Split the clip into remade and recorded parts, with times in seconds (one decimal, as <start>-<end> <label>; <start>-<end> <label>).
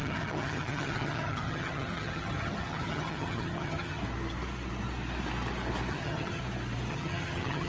0.0-4.0 remade; 4.0-5.9 recorded; 5.9-6.4 remade; 6.4-6.9 recorded; 6.9-7.7 remade